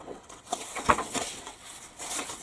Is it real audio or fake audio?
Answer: fake